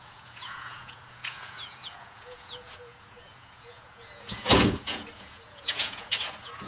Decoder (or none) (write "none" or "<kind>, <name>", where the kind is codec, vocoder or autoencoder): vocoder, Vocos